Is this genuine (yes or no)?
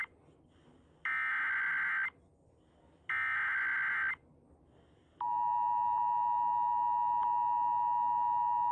yes